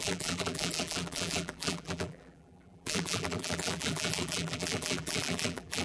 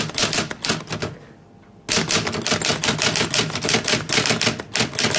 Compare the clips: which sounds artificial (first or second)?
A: first